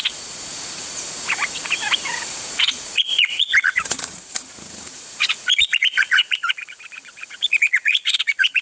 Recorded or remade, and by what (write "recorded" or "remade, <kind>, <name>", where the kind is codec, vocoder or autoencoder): remade, vocoder, Vocos